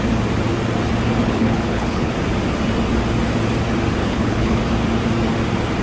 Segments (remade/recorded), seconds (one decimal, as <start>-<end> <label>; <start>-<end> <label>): 0.0-1.2 recorded; 1.2-2.1 remade; 2.1-4.0 recorded; 4.0-4.6 remade; 4.6-5.8 recorded